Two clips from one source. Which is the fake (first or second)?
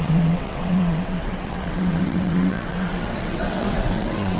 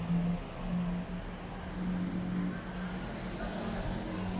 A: first